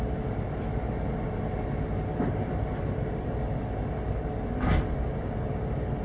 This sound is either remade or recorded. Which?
recorded